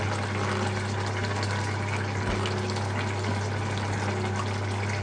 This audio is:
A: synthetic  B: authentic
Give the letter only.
B